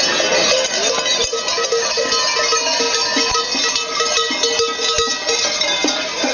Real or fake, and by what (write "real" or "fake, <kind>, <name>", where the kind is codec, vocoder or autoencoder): real